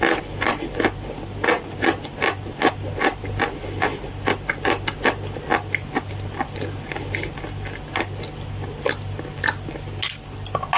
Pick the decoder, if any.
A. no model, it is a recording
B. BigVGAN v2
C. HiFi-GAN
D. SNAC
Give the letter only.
A